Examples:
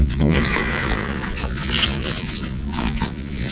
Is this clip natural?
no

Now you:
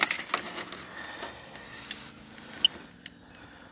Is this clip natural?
yes